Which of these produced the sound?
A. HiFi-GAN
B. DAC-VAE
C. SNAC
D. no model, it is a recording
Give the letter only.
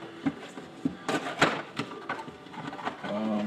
D